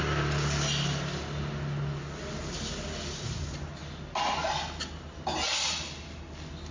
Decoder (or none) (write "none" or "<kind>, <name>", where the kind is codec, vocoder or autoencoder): none